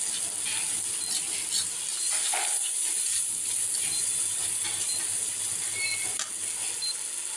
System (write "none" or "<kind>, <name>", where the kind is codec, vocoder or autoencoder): none